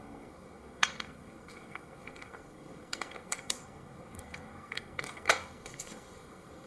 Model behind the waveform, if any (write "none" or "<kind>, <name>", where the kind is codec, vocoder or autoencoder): codec, SNAC